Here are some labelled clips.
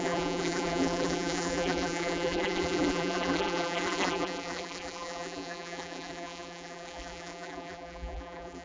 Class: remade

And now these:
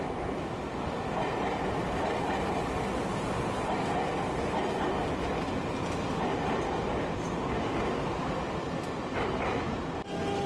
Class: recorded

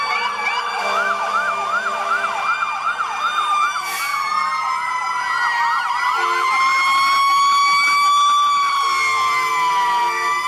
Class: recorded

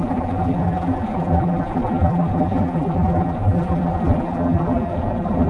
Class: remade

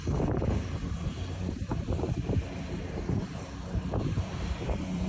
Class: remade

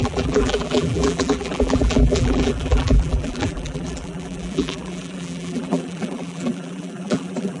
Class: remade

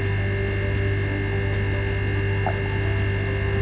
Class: recorded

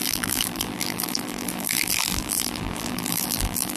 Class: remade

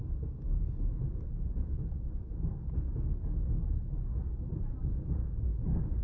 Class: recorded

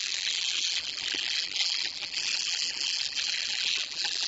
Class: remade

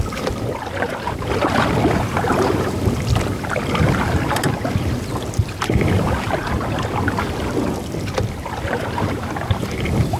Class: remade